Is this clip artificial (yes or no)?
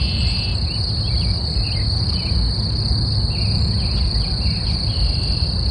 no